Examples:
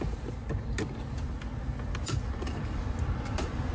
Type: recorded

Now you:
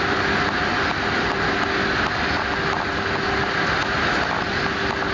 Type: recorded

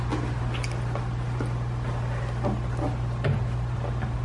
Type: recorded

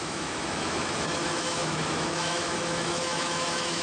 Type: remade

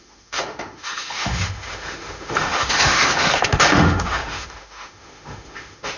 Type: remade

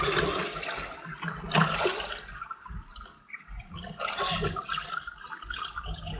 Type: recorded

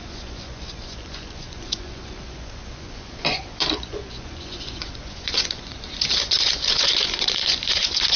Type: remade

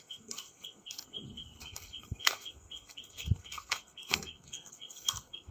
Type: remade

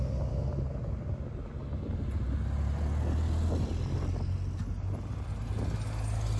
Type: recorded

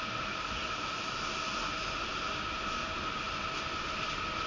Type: recorded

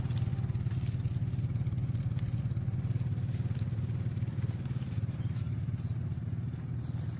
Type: recorded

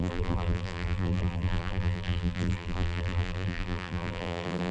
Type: remade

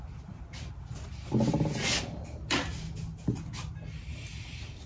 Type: recorded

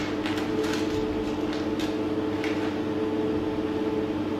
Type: recorded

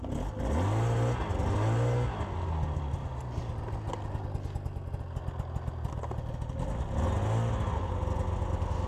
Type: recorded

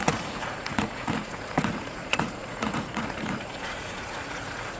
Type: remade